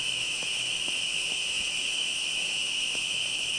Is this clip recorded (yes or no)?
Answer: no